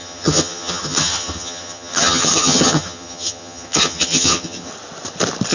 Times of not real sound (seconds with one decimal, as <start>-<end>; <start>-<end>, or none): 0.0-4.7